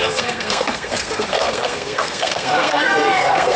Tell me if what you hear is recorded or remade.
remade